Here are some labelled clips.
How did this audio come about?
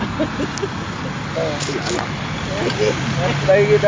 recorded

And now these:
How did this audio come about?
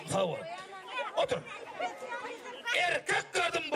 recorded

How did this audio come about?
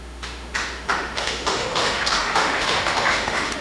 remade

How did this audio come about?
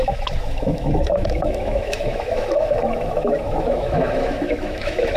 remade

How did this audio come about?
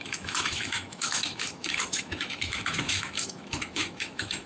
remade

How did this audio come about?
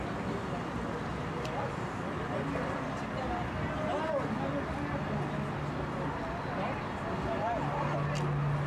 recorded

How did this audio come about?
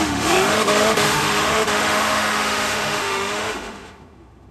remade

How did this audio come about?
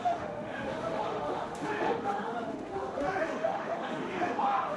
remade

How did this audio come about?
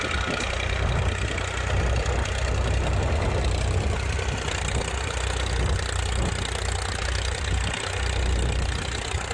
recorded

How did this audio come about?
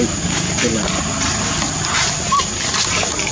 recorded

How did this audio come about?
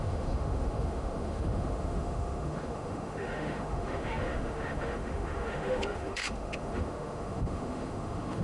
remade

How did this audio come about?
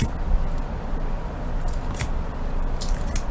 recorded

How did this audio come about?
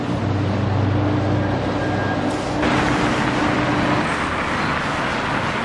recorded